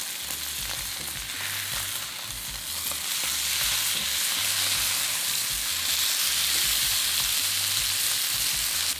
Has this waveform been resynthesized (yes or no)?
no